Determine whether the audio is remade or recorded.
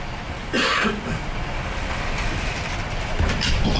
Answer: recorded